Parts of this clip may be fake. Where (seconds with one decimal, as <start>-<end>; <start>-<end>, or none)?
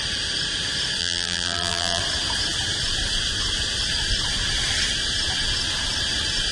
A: 1.0-2.0